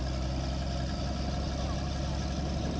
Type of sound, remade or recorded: recorded